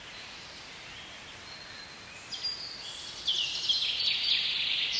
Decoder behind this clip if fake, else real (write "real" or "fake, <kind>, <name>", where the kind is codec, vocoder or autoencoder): real